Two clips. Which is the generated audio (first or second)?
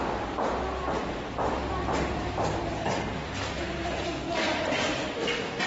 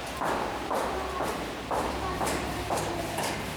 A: second